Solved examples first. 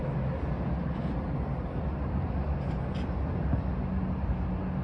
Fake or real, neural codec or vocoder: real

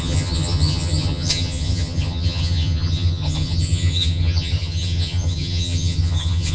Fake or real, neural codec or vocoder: fake, vocoder, HiFi-GAN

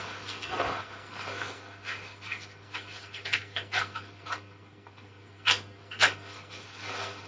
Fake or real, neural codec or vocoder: fake, codec, SNAC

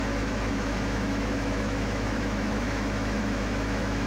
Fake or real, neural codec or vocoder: fake, autoencoder, DAC-VAE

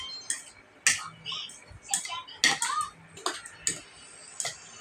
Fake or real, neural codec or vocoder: real